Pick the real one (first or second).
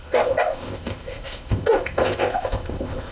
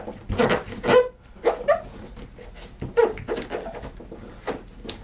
second